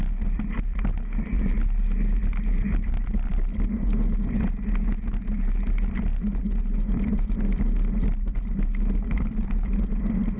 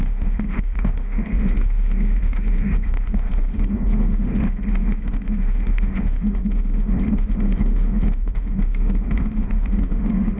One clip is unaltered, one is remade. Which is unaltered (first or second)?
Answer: first